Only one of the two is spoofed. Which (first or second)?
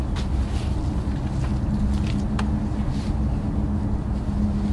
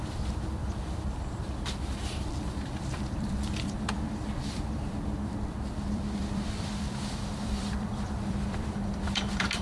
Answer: second